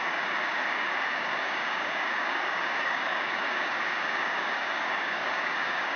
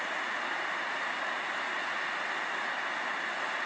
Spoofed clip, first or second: first